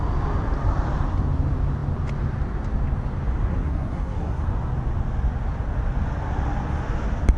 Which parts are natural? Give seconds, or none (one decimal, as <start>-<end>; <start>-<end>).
0.0-3.5; 4.5-7.4